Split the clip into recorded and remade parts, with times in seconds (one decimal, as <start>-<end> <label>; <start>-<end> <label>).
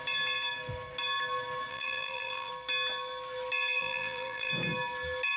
0.0-1.7 recorded; 1.7-2.5 remade; 2.5-3.8 recorded; 3.8-4.5 remade; 4.5-5.4 recorded